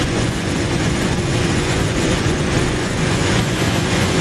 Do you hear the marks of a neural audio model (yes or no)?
yes